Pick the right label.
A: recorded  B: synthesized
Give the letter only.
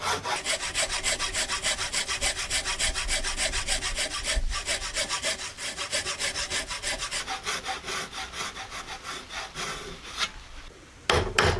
A